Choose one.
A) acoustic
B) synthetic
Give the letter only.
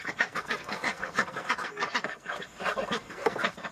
B